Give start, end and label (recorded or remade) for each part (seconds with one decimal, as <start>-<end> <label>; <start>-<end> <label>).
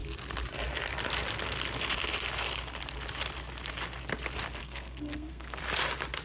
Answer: 0.0-4.6 recorded; 4.6-5.6 remade; 5.6-6.2 recorded